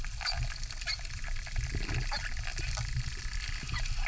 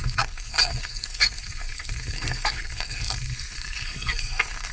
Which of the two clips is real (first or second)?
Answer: first